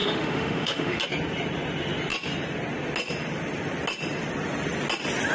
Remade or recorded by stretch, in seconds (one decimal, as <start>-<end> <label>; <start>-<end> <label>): 0.0-1.0 remade; 1.0-5.3 recorded

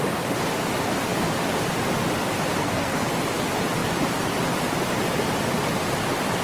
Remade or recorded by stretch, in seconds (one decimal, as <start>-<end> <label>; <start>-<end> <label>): 0.0-2.6 recorded; 2.6-3.1 remade; 3.1-6.4 recorded

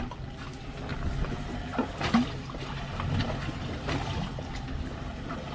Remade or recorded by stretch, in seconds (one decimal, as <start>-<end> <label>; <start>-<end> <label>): 0.0-5.5 recorded

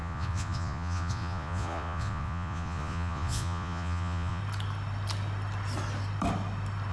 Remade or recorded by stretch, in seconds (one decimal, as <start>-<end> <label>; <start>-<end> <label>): 0.0-4.4 remade; 4.4-6.9 recorded

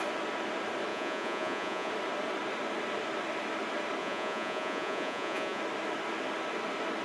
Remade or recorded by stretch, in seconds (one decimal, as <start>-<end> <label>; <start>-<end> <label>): 0.0-0.9 recorded; 0.9-1.9 remade; 1.9-4.0 recorded; 4.0-5.6 remade; 5.6-7.0 recorded

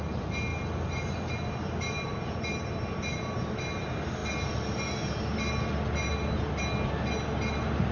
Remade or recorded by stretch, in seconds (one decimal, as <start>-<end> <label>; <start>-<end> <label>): 0.0-7.9 recorded

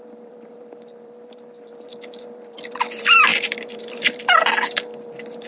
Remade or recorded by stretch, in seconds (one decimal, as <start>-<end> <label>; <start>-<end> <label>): 0.0-5.5 remade

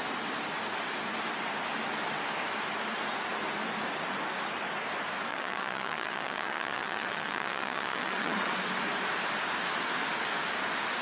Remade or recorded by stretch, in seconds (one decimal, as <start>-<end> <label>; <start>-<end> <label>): 0.0-5.3 recorded; 5.3-8.5 remade; 8.5-11.0 recorded